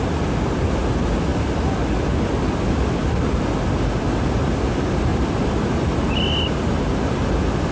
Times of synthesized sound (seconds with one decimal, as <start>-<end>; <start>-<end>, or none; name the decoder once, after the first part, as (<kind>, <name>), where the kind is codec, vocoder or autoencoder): none